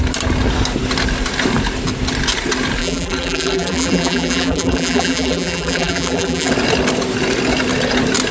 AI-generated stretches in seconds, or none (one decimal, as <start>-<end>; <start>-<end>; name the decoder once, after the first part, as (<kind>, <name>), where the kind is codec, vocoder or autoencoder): 2.8-6.5 (vocoder, BigVGAN v2)